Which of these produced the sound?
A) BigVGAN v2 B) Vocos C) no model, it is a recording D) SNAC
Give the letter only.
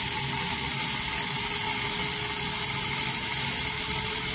C